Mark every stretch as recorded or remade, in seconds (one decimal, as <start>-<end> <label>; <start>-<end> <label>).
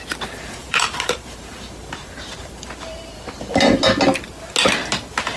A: 0.0-0.6 recorded; 0.6-3.8 remade; 3.8-5.4 recorded